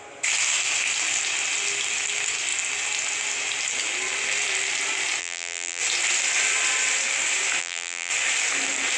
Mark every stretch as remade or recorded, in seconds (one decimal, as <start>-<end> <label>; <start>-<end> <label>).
0.0-5.2 recorded; 5.2-5.8 remade; 5.8-7.6 recorded; 7.6-8.1 remade; 8.1-9.0 recorded